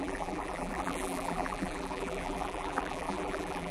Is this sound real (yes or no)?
no